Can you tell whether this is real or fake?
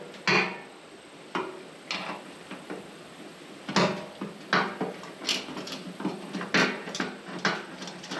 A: real